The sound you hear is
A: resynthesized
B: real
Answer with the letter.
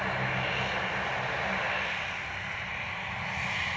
B